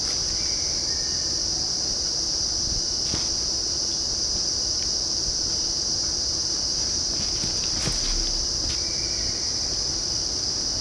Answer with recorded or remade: recorded